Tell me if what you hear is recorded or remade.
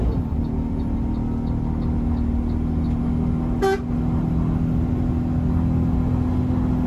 recorded